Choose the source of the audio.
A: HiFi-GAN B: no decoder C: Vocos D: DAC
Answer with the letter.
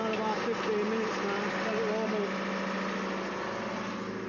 B